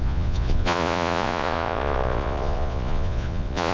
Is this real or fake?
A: fake